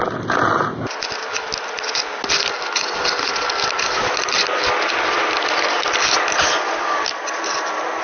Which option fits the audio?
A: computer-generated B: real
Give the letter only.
B